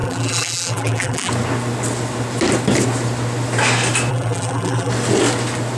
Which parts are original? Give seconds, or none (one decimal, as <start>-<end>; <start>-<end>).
1.3-4.1; 4.9-5.8

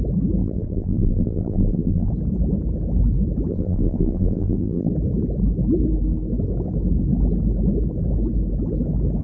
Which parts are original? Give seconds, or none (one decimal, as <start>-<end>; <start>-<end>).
0.0-0.4; 2.1-3.5; 4.9-9.2

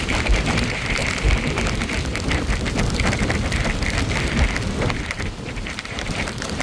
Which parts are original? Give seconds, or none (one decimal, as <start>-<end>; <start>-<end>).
1.0-5.0

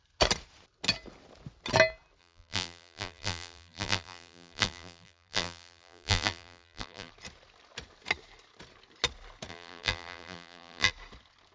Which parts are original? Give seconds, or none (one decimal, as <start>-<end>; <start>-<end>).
0.0-2.2; 7.1-9.5; 10.9-11.5

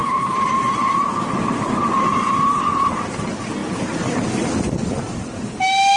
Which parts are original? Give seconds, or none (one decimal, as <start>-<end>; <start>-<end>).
1.3-6.0

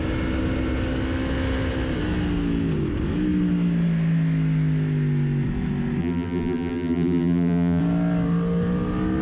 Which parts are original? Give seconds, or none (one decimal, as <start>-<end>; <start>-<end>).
0.0-6.0; 7.8-9.2

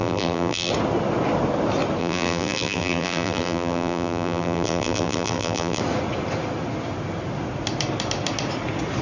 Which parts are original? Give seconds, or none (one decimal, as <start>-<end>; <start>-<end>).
0.7-2.0; 5.8-9.0

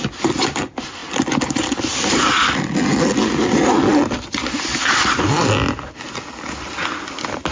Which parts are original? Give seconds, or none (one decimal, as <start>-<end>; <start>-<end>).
0.0-1.0; 5.5-7.5